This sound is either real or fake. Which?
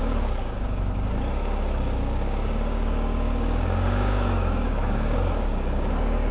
fake